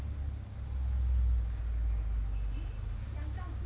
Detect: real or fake real